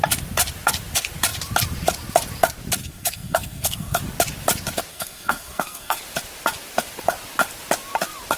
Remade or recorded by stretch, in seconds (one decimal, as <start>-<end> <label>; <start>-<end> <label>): 0.0-2.8 recorded; 2.8-4.0 remade; 4.0-4.9 recorded; 4.9-6.0 remade; 6.0-8.4 recorded